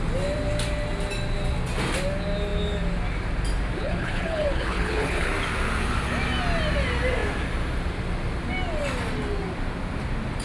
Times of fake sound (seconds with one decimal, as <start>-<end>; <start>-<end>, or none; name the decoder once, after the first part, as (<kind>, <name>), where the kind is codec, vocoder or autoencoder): 3.8-5.3 (codec, HILCodec)